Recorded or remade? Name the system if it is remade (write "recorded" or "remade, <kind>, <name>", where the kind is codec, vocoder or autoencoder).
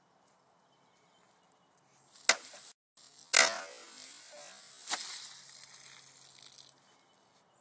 recorded